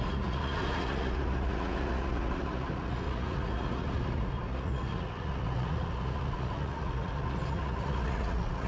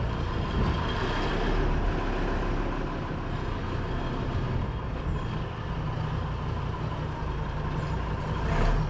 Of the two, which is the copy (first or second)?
first